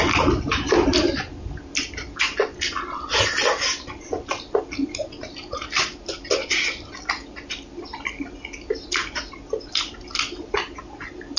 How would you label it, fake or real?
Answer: real